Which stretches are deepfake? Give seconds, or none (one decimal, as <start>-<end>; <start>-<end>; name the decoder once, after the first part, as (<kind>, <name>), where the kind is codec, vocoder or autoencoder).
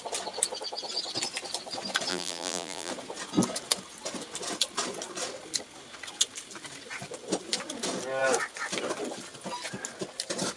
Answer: 2.1-2.9 (vocoder, BigVGAN v2)